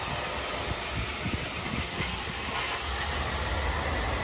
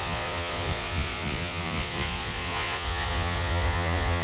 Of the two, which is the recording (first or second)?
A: first